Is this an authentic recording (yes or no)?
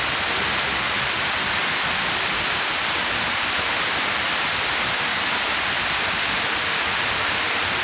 yes